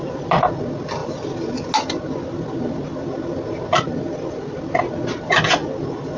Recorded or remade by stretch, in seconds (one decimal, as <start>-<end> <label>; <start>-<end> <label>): 0.0-6.2 recorded